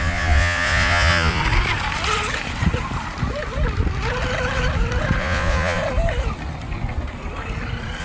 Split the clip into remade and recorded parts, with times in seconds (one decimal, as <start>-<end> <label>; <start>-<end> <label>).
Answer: 0.0-1.4 remade; 1.4-5.2 recorded; 5.2-5.8 remade; 5.8-8.0 recorded